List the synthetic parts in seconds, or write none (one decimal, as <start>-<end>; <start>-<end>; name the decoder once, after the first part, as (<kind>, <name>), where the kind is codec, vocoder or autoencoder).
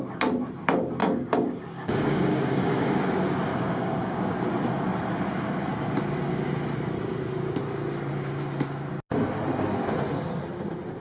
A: 1.0-3.0 (codec, DAC); 3.5-4.3